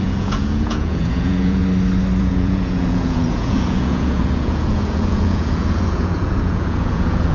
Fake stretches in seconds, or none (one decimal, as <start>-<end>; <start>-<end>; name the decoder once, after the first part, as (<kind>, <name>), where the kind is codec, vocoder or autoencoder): 0.0-1.6 (vocoder, Vocos); 2.2-7.3